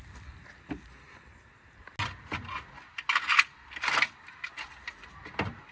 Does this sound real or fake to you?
real